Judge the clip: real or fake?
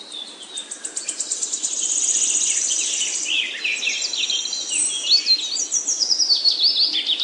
real